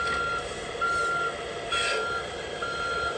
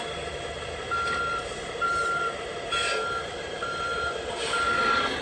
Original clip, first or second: first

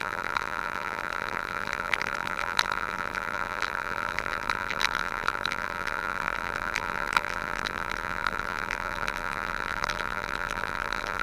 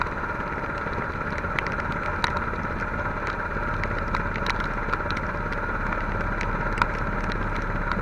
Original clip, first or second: second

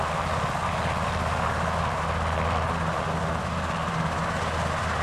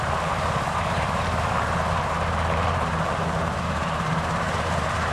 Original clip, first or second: first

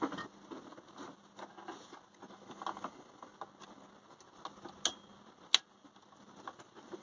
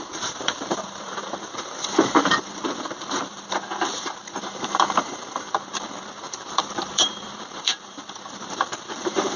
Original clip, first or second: first